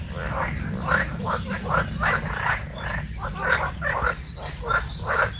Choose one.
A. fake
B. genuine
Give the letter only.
B